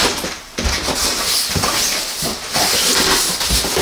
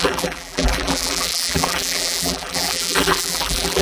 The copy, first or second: second